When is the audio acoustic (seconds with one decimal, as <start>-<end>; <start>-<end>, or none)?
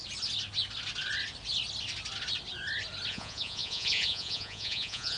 0.0-3.1